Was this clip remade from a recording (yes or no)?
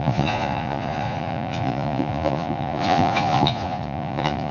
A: yes